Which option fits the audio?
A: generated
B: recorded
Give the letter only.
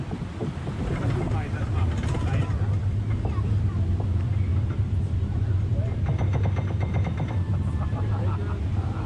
B